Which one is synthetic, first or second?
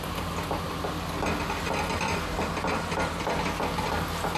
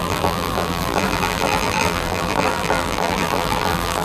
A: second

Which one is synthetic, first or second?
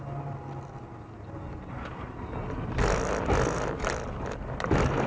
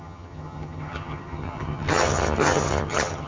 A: second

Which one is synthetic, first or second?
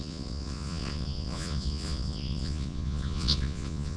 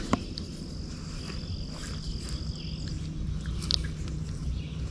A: first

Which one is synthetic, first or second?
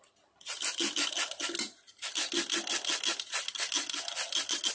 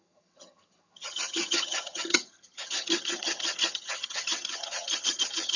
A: second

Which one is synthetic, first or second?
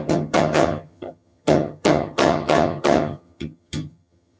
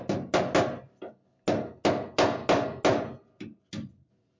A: first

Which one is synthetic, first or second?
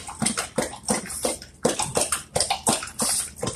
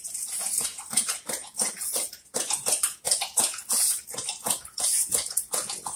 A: second